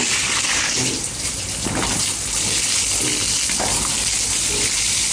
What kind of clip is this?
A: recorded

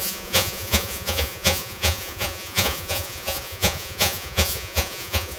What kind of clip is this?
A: remade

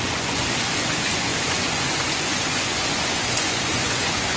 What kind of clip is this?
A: remade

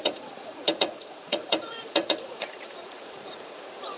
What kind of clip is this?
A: remade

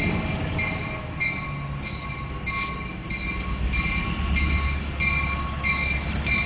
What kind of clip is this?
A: recorded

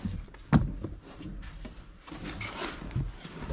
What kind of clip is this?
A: recorded